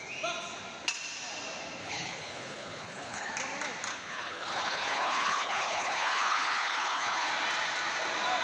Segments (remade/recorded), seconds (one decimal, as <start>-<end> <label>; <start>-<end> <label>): 0.0-1.8 recorded; 1.8-3.3 remade; 3.3-3.9 recorded; 3.9-7.3 remade; 7.3-8.4 recorded